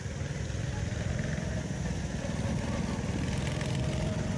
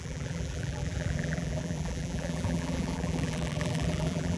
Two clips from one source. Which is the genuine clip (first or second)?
first